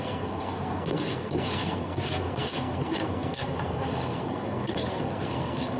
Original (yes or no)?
no